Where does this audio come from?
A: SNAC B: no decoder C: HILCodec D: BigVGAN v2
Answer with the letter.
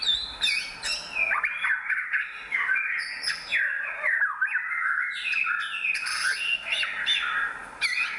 B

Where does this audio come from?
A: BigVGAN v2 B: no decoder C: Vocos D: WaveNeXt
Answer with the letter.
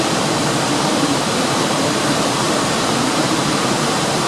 A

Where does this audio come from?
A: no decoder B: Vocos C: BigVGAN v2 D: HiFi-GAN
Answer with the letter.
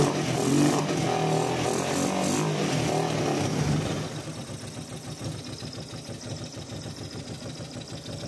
A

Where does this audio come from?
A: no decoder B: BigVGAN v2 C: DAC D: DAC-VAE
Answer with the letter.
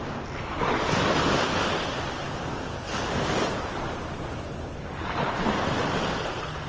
A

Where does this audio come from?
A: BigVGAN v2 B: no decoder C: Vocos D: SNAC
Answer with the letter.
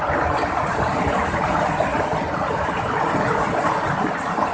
B